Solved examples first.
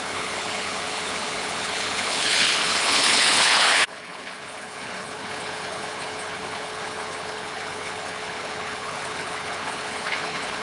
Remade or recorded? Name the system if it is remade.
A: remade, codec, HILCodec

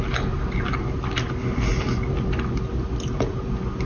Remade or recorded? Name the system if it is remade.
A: recorded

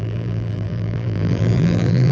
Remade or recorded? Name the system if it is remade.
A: remade, vocoder, BigVGAN v2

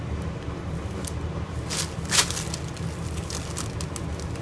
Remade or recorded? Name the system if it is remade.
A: recorded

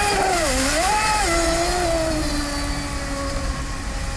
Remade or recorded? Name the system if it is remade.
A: recorded